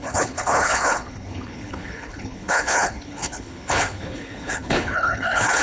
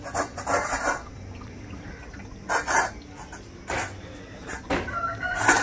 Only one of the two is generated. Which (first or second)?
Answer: first